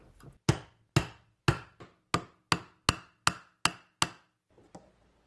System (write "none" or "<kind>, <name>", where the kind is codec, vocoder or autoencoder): none